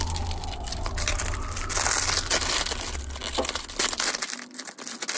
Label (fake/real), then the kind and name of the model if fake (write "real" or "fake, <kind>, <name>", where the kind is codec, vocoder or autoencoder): real